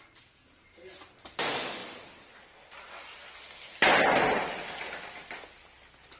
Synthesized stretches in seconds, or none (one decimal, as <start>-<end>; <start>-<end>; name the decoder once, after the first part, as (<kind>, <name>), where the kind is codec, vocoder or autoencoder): none